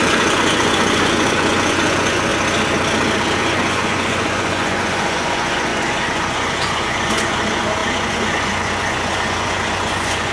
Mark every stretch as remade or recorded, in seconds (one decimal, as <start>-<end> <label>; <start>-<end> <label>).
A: 0.0-2.3 remade; 2.3-3.4 recorded; 3.4-10.3 remade